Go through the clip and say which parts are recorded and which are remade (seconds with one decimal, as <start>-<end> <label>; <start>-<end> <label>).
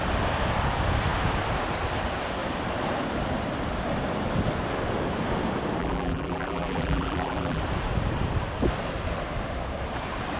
0.0-5.8 recorded; 5.8-7.6 remade; 7.6-10.4 recorded